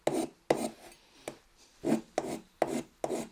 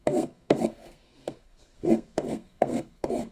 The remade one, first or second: second